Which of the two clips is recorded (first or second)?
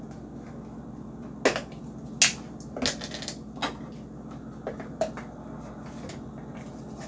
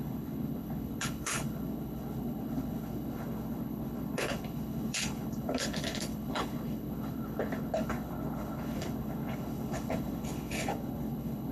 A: first